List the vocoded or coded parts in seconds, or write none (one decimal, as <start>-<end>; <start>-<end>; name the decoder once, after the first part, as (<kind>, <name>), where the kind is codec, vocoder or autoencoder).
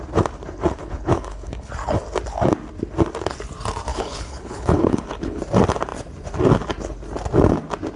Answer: 0.8-1.7 (codec, HILCodec); 3.9-5.4